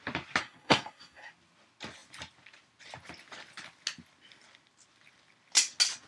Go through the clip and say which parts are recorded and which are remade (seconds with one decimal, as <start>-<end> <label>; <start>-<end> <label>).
0.0-0.4 recorded; 0.4-1.3 remade; 1.3-6.1 recorded